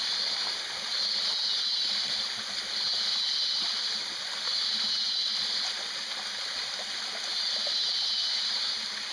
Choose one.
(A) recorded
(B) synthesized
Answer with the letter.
A